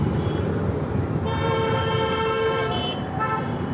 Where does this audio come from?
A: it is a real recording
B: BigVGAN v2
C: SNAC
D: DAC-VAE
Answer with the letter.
B